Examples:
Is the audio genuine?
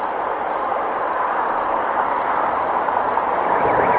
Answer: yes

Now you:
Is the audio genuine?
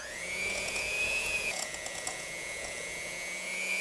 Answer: no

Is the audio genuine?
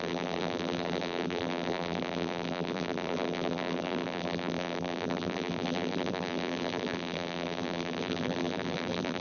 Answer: no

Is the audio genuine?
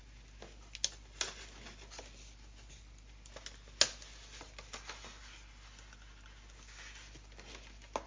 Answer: yes